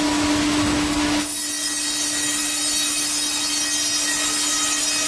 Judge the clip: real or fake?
real